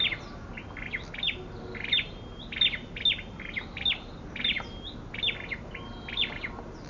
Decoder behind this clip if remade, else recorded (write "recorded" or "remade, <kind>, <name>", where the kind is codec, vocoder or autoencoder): recorded